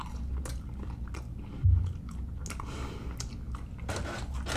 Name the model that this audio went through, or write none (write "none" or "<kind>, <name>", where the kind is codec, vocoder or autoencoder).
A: none